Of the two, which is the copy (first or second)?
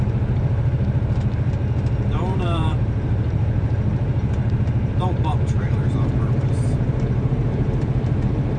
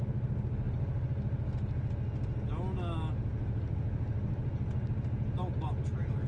first